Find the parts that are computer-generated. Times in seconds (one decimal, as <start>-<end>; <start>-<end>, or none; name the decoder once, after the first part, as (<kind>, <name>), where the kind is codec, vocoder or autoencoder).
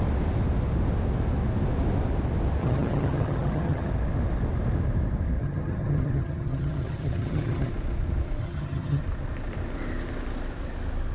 2.6-3.9 (vocoder, HiFi-GAN); 5.4-7.7; 8.4-9.0